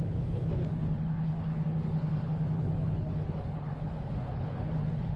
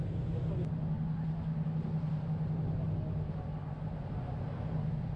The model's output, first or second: first